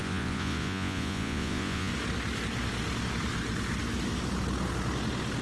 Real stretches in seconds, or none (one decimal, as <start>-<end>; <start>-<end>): 1.9-5.4